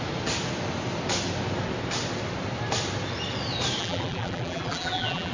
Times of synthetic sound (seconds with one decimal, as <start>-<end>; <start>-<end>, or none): 3.8-5.3